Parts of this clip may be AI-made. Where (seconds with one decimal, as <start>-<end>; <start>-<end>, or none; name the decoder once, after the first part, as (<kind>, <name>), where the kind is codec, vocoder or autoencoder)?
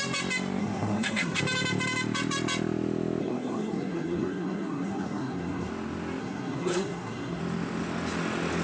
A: 0.6-1.4 (codec, SNAC); 3.2-5.7; 6.2-7.4